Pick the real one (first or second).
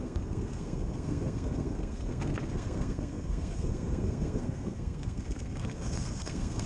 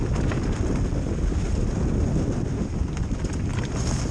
second